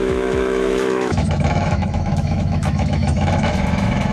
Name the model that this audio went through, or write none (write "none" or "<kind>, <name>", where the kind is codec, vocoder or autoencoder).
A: autoencoder, DAC-VAE